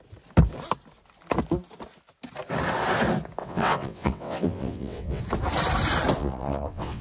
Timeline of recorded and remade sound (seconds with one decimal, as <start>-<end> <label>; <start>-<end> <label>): 0.0-3.4 recorded; 3.4-5.2 remade; 5.2-6.2 recorded; 6.2-7.0 remade